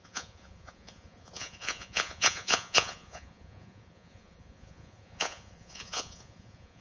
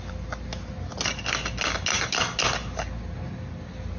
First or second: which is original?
second